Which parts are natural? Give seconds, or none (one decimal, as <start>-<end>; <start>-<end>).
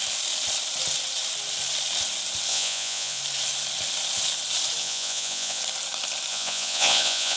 0.0-2.5; 3.2-4.8; 5.6-6.3